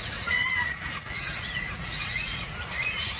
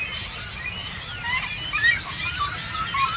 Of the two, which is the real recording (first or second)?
second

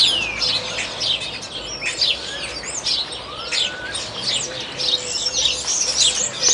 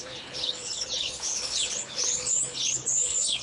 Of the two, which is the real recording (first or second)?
first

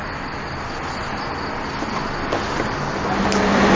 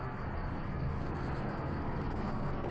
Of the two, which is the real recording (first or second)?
first